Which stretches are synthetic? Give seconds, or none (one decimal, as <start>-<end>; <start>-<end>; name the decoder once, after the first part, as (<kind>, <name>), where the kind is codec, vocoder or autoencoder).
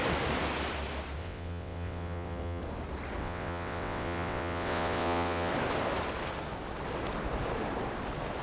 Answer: 1.2-2.6 (vocoder, WaveNeXt); 3.2-5.5